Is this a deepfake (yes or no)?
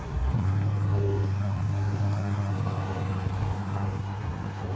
yes